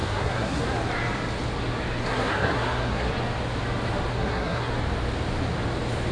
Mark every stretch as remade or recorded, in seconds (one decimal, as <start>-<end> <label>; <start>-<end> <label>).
0.0-0.6 remade; 0.6-2.0 recorded; 2.0-3.1 remade; 3.1-4.1 recorded; 4.1-4.7 remade; 4.7-6.1 recorded